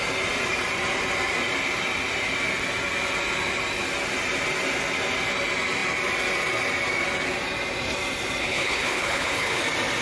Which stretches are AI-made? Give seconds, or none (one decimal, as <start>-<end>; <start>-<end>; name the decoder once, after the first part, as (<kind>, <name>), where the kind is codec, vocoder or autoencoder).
8.4-9.6 (codec, HILCodec)